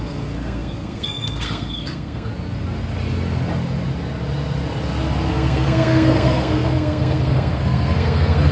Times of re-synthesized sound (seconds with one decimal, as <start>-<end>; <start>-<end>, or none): 0.0-2.3; 5.3-8.5